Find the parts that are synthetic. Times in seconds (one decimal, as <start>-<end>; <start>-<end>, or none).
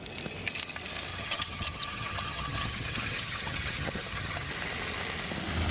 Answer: 1.1-4.5